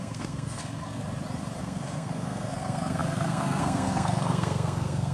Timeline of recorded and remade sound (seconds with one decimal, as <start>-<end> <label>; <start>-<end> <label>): 0.0-1.0 remade; 1.0-1.6 recorded; 1.6-5.1 remade